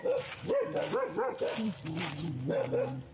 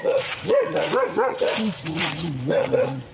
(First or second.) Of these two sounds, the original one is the first